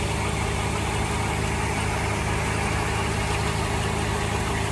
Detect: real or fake real